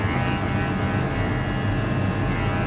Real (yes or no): yes